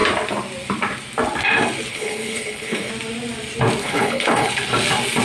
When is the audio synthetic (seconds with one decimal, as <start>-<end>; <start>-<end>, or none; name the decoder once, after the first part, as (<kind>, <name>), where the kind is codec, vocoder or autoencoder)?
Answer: 1.9-2.9 (codec, HILCodec); 3.8-4.5